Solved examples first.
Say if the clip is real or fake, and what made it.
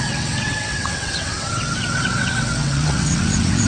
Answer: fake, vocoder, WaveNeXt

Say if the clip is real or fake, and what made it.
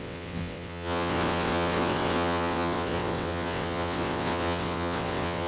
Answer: fake, vocoder, WaveNeXt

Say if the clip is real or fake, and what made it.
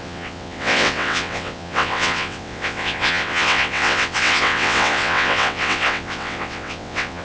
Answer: fake, vocoder, WaveNeXt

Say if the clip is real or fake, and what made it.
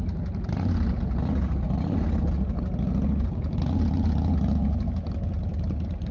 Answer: real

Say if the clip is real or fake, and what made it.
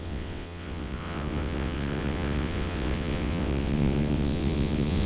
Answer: fake, vocoder, WaveNeXt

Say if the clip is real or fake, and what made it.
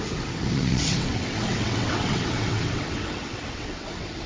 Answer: fake, vocoder, WaveNeXt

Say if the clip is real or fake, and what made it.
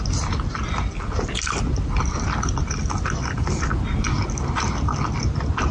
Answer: real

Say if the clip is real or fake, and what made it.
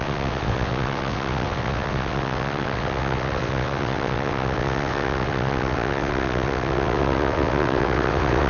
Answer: fake, vocoder, WaveNeXt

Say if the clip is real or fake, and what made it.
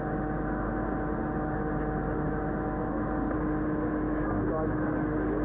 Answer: real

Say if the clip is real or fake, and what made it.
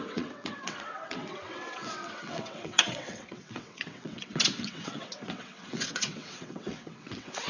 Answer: fake, vocoder, WaveNeXt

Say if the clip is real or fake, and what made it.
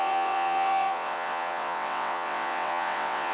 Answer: fake, vocoder, WaveNeXt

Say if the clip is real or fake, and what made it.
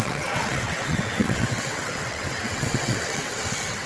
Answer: fake, vocoder, WaveNeXt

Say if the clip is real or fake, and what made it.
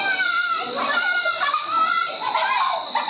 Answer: real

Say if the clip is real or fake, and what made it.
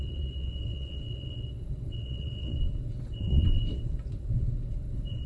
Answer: fake, vocoder, WaveNeXt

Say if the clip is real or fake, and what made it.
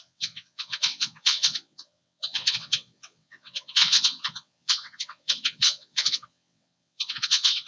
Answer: fake, vocoder, WaveNeXt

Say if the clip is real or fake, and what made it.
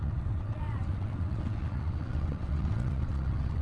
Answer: fake, vocoder, WaveNeXt